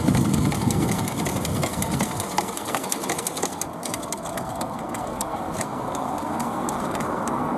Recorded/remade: remade